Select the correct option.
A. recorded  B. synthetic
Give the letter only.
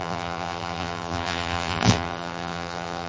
B